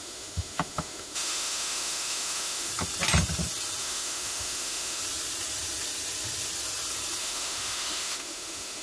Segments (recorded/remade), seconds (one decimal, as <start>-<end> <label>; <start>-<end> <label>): 0.0-2.7 remade; 2.7-3.8 recorded; 3.8-5.0 remade; 5.0-7.2 recorded; 7.2-8.8 remade